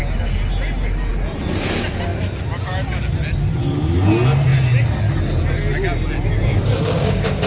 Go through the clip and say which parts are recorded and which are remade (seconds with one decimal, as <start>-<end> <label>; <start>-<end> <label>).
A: 0.0-6.5 recorded; 6.5-7.5 remade